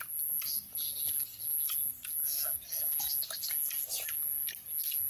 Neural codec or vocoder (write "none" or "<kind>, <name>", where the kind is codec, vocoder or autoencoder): none